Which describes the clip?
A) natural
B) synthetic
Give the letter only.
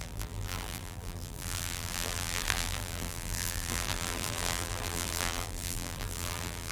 B